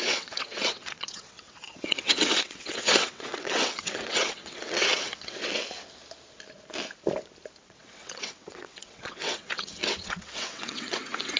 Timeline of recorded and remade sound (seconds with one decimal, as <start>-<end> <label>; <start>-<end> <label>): 0.0-5.6 remade; 5.6-7.6 recorded; 7.6-11.4 remade